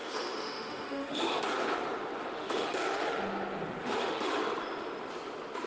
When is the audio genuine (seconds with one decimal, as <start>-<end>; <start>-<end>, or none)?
1.4-2.2; 3.2-3.8; 4.4-5.7